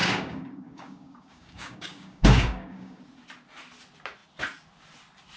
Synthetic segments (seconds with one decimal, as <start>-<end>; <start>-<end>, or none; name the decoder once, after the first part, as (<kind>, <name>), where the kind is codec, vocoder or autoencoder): 0.0-3.0 (codec, DAC)